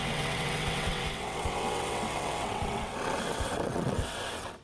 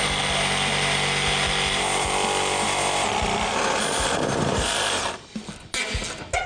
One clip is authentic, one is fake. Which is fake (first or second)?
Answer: first